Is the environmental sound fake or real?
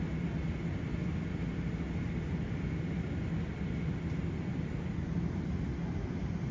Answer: real